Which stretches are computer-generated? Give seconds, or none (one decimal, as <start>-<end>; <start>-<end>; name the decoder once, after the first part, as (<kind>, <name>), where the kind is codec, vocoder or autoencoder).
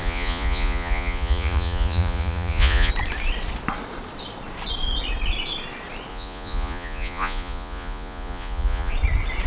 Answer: 0.0-2.9 (vocoder, Vocos); 6.1-8.9